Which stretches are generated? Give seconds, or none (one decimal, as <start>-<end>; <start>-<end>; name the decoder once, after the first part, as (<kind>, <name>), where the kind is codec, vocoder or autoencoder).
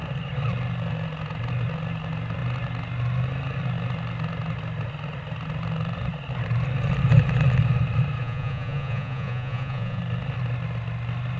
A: 8.2-10.0 (vocoder, Vocos)